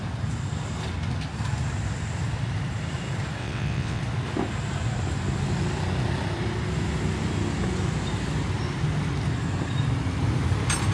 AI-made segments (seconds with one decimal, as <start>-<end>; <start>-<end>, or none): 3.4-4.0